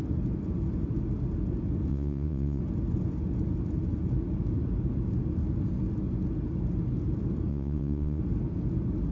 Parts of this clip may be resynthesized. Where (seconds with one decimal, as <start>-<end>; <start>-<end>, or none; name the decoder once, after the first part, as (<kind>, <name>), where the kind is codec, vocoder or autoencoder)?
1.9-2.6 (vocoder, Vocos); 7.5-8.2